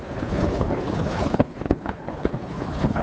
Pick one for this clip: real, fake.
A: fake